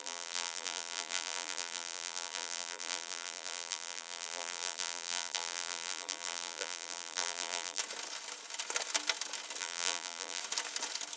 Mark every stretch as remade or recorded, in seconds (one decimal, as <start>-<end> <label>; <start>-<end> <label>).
0.0-7.8 remade; 7.8-9.6 recorded; 9.6-10.4 remade; 10.4-11.2 recorded